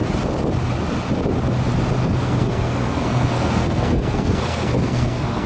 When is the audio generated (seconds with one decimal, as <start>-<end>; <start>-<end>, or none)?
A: 2.0-5.5